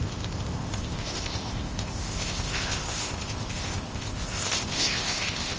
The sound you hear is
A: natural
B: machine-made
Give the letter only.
B